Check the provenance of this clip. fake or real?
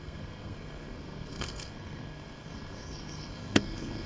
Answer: fake